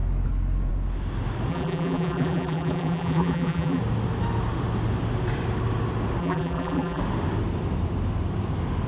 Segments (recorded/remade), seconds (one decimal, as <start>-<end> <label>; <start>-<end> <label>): 0.0-1.5 recorded; 1.5-3.8 remade; 3.8-6.2 recorded; 6.2-7.0 remade; 7.0-8.9 recorded